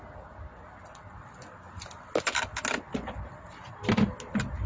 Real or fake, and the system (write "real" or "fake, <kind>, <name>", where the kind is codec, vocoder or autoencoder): real